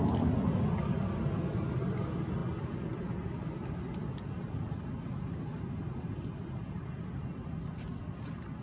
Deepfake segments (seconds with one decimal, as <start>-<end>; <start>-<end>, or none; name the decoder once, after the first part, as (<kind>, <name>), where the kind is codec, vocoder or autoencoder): none